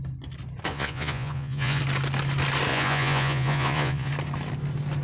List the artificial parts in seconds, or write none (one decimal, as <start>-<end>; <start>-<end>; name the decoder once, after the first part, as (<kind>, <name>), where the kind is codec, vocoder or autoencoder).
0.7-1.8 (vocoder, Vocos); 2.7-4.1

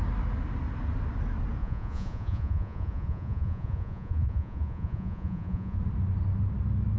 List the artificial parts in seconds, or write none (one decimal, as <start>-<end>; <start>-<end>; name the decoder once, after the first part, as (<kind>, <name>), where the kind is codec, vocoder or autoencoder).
1.6-5.8 (vocoder, Vocos)

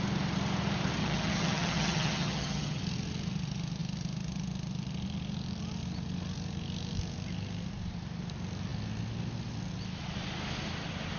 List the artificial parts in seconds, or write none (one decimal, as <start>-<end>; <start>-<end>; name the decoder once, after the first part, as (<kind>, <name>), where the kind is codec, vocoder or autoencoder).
1.0-2.8 (vocoder, HiFi-GAN)

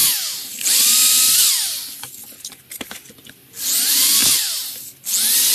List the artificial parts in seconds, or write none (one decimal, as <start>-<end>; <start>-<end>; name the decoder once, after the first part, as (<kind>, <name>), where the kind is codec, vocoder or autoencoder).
none

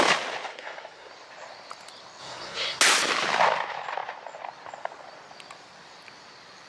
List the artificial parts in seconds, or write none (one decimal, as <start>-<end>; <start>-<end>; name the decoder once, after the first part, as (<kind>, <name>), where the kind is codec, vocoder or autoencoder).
0.5-1.1 (codec, SNAC); 2.2-2.8